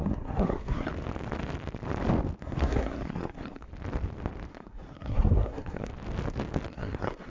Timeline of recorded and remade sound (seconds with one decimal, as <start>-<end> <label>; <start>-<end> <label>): 0.0-0.9 remade; 0.9-2.4 recorded; 2.4-3.7 remade; 3.7-4.5 recorded; 4.5-5.9 remade; 5.9-6.7 recorded; 6.7-7.3 remade